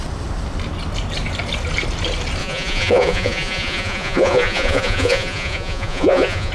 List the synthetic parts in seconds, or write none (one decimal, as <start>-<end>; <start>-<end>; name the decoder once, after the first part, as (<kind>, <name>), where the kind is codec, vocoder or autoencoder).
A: 2.4-6.5 (vocoder, Vocos)